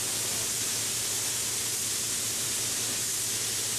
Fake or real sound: real